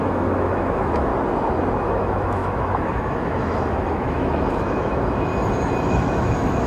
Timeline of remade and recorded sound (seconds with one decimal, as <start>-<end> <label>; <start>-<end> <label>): 0.0-1.1 remade; 1.1-1.8 recorded; 1.8-5.3 remade; 5.3-5.9 recorded; 5.9-6.7 remade

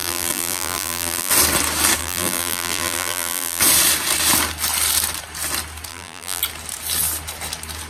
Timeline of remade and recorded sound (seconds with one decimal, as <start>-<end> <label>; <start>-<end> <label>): 0.0-1.3 remade; 1.3-2.0 recorded; 2.0-3.6 remade; 3.6-5.9 recorded; 5.9-6.4 remade; 6.4-7.9 recorded

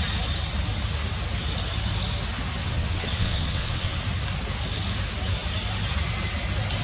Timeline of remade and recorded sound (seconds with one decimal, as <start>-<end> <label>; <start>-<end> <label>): 0.0-2.6 recorded; 2.6-4.0 remade; 4.0-6.8 recorded

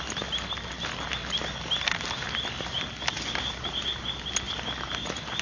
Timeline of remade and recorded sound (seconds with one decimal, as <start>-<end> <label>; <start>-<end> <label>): 0.0-5.4 recorded

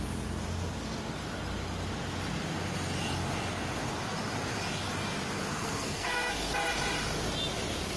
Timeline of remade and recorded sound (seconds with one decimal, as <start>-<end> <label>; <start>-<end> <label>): 0.0-5.5 recorded; 5.5-6.3 remade; 6.3-8.0 recorded

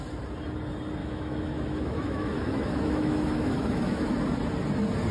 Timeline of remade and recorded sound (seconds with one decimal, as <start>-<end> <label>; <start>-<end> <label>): 0.0-1.0 recorded; 1.0-4.1 remade; 4.1-5.1 recorded

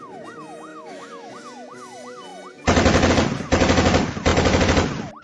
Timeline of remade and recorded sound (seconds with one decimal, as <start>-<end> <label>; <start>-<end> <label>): 0.0-0.7 recorded; 0.7-1.3 remade; 1.3-5.2 recorded